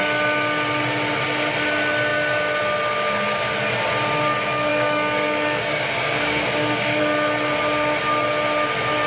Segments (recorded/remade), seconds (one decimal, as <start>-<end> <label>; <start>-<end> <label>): 0.0-4.7 recorded; 4.7-7.0 remade; 7.0-9.1 recorded